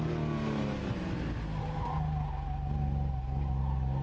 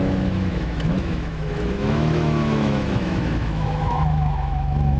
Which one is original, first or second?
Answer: first